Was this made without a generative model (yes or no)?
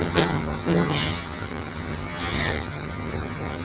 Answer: no